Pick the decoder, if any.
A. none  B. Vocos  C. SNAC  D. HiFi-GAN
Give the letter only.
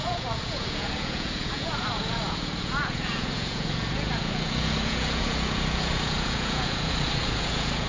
B